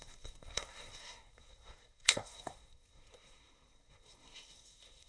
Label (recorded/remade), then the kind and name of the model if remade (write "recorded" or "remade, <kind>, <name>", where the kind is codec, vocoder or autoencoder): remade, codec, SNAC